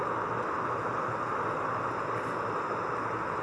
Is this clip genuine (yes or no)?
yes